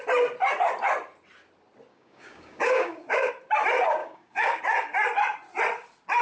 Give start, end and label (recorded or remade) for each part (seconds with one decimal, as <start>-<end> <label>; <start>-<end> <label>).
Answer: 0.0-1.9 recorded; 1.9-3.3 remade; 3.3-4.0 recorded; 4.0-4.6 remade; 4.6-6.2 recorded